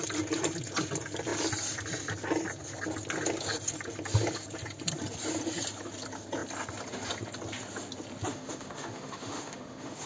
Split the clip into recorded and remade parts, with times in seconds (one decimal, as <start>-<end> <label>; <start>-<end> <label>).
0.0-8.3 recorded; 8.3-10.1 remade